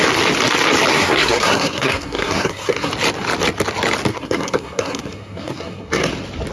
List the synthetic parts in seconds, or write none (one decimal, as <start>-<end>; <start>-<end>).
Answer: 0.9-2.9; 4.1-6.1